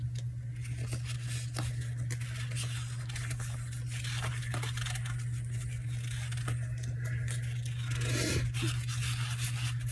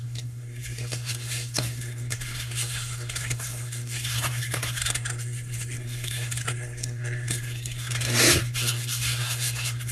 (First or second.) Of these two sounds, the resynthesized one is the second